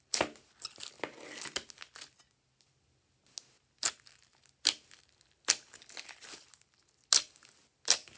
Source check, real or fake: real